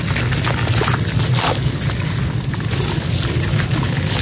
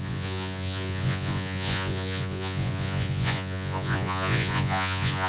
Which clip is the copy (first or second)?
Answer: second